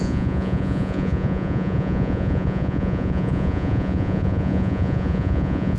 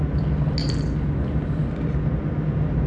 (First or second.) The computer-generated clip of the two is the first